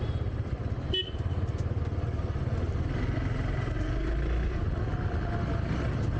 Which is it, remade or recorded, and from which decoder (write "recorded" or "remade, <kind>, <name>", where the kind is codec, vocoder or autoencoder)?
recorded